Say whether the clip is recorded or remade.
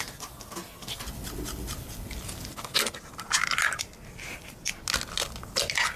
recorded